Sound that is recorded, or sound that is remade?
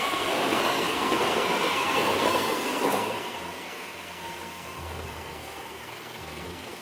remade